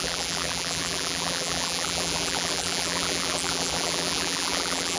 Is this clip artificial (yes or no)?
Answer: yes